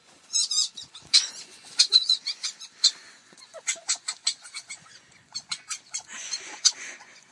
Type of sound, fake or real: fake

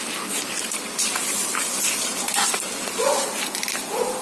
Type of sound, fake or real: real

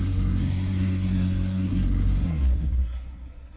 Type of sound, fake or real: fake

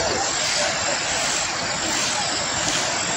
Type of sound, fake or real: real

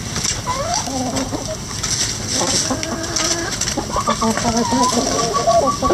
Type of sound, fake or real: real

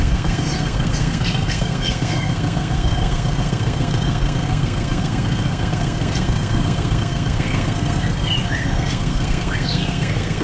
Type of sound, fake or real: fake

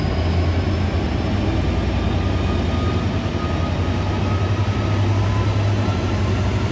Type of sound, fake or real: real